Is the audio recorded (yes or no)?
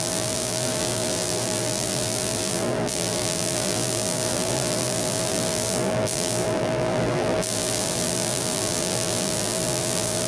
no